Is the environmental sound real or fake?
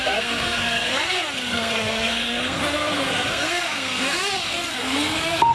fake